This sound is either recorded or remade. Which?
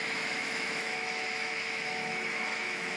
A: remade